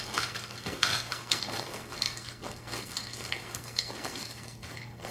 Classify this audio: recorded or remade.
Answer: remade